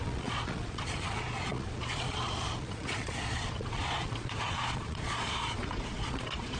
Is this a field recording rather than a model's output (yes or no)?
no